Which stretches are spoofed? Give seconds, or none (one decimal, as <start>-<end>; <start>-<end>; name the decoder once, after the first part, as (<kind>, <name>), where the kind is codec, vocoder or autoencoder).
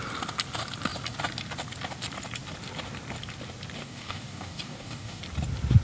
3.8-5.2 (codec, DAC)